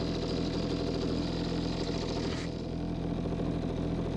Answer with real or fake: real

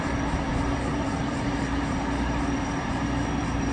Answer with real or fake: fake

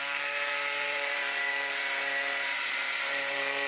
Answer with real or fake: fake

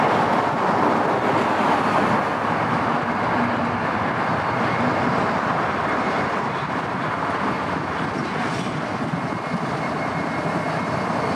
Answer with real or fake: real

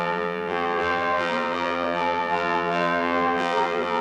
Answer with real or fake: fake